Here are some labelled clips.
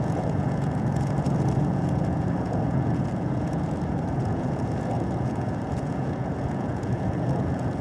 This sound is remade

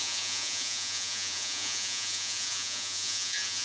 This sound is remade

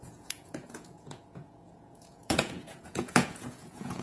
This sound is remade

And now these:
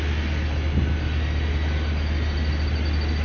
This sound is recorded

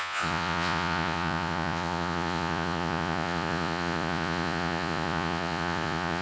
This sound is remade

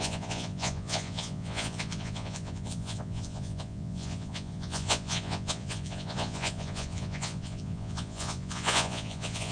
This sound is remade